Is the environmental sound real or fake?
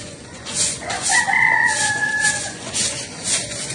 fake